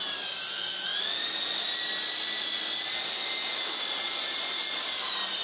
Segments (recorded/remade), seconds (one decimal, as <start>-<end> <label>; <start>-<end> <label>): 0.0-5.4 recorded